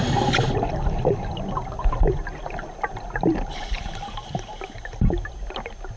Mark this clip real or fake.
real